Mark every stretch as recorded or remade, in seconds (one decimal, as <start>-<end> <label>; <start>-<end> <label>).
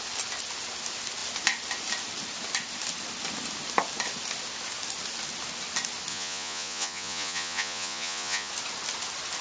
0.0-6.1 recorded; 6.1-8.5 remade; 8.5-9.4 recorded